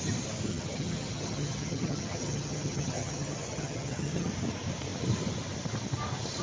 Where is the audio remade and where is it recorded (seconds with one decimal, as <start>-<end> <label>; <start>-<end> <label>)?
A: 0.0-0.5 recorded; 0.5-4.3 remade; 4.3-6.4 recorded